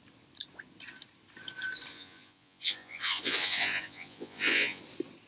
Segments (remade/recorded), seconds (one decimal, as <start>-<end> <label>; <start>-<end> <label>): 0.0-1.9 recorded; 1.9-4.8 remade; 4.8-5.3 recorded